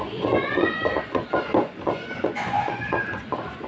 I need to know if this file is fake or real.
fake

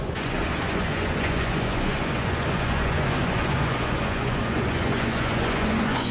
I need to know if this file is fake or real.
fake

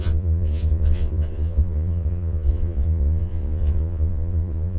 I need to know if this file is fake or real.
fake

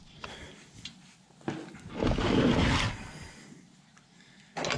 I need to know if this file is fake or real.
real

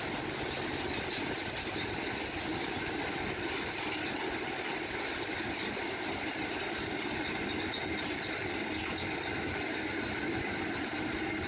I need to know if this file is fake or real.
real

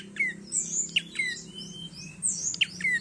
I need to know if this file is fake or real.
real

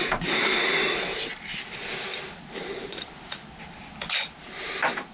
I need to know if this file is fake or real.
real